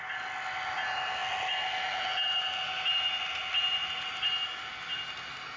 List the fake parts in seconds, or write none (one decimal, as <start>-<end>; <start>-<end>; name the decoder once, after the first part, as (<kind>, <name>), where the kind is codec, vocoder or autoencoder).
none